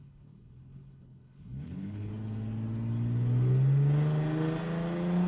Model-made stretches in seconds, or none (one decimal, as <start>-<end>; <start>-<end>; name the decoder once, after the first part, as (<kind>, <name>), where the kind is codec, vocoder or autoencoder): 0.0-2.1 (codec, HILCodec)